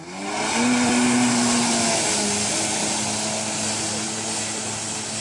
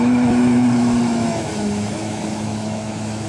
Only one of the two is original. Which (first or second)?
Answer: first